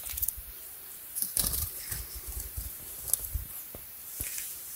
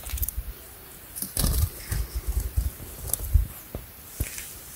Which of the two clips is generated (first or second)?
first